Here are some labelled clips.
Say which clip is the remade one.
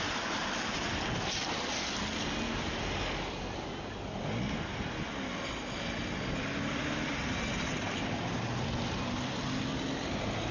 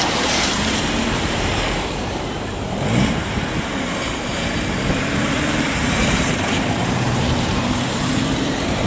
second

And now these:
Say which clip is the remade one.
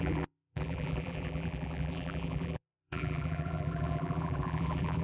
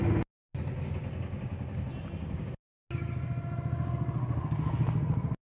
first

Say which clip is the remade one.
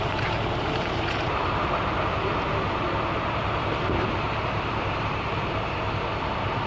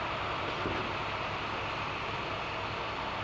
first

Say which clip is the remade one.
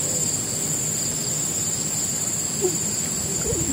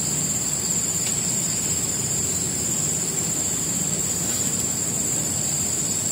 second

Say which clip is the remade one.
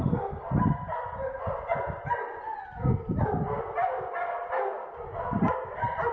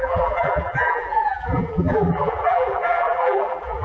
second